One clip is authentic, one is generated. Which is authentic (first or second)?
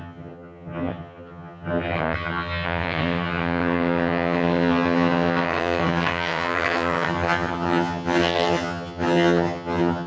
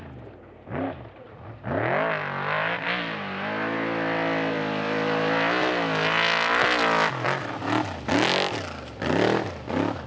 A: second